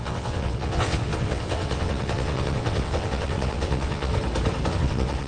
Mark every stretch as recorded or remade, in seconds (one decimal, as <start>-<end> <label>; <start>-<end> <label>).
0.0-4.1 remade; 4.1-4.7 recorded; 4.7-5.3 remade